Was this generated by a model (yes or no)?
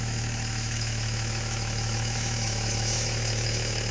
yes